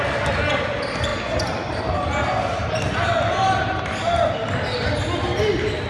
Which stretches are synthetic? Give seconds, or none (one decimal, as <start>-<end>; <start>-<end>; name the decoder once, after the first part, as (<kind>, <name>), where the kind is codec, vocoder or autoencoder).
none